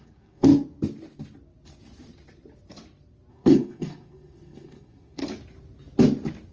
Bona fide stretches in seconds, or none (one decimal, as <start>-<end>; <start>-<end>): 0.5-3.3; 5.2-6.5